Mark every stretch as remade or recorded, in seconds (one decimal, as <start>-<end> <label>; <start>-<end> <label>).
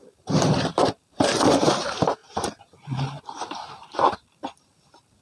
0.0-5.2 remade